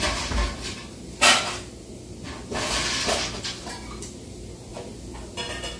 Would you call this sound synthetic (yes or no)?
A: no